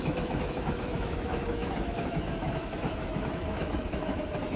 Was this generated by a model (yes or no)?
yes